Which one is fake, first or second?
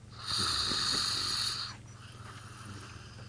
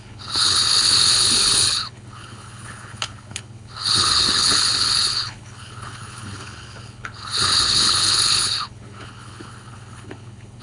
second